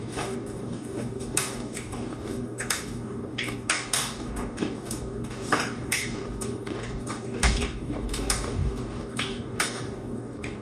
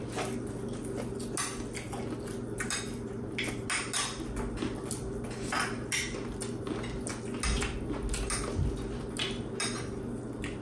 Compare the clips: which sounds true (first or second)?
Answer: second